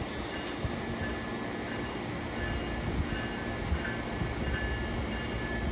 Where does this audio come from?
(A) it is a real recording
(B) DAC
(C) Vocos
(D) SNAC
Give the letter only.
A